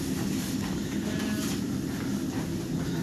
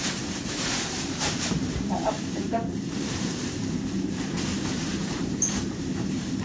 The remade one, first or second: second